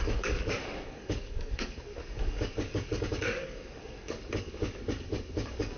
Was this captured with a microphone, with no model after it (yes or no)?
no